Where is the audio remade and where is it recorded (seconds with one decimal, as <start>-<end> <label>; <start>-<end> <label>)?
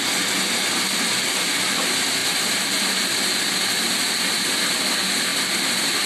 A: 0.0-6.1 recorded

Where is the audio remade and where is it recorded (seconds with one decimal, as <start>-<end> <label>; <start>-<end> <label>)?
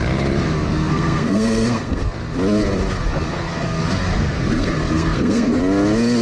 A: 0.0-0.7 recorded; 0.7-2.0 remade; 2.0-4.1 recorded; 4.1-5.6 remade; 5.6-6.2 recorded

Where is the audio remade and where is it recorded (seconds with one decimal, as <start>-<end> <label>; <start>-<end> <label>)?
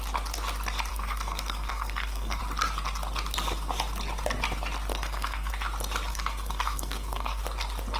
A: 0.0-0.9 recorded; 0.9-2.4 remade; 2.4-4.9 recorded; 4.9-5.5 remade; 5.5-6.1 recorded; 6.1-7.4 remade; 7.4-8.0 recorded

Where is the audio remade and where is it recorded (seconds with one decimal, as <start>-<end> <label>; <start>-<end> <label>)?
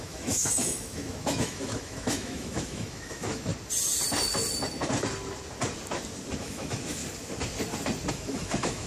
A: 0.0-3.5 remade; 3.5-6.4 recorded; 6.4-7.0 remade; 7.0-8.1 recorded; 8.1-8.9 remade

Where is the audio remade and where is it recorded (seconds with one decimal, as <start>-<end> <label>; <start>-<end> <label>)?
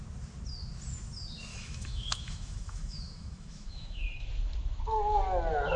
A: 0.0-1.5 recorded; 1.5-4.3 remade; 4.3-5.8 recorded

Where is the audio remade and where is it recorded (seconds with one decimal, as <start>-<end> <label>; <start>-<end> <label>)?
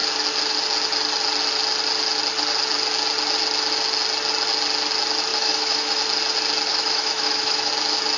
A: 0.0-5.3 recorded; 5.3-6.0 remade; 6.0-6.7 recorded; 6.7-7.7 remade; 7.7-8.2 recorded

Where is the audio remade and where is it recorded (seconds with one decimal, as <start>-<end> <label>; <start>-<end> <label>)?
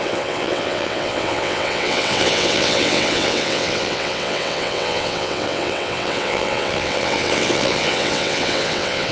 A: 0.0-9.1 remade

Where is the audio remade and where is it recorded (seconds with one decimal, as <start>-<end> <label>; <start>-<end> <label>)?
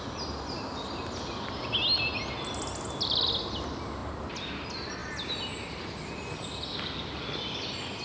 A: 0.0-8.0 recorded